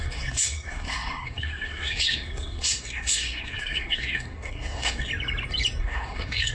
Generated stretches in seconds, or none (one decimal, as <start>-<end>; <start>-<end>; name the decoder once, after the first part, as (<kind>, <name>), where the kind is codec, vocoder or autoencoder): 0.0-5.1 (codec, SNAC); 5.8-6.5